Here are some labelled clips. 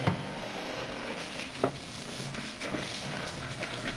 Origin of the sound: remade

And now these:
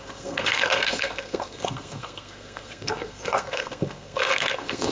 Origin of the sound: remade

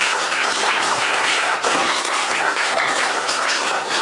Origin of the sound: remade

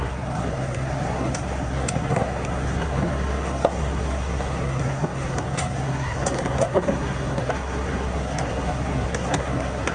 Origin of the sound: remade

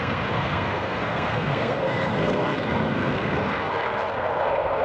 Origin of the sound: remade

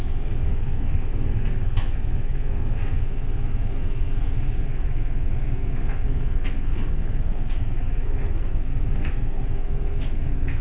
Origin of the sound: remade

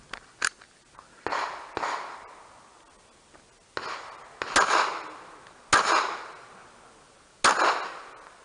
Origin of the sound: recorded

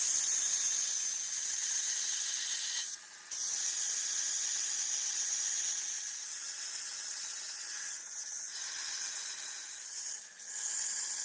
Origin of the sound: recorded